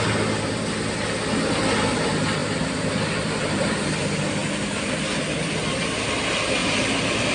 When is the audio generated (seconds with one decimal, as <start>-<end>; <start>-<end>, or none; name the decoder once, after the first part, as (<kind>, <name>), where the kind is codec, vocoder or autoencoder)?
2.4-4.0 (vocoder, BigVGAN v2); 6.6-7.3